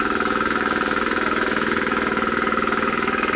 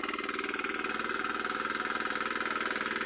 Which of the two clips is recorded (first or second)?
second